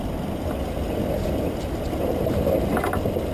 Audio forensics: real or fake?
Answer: real